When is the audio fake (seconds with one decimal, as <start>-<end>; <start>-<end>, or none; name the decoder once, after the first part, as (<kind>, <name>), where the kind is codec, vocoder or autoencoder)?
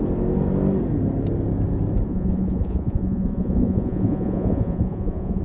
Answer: 2.1-5.4 (vocoder, Vocos)